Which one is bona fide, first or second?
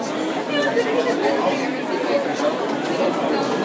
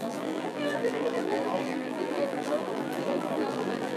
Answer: first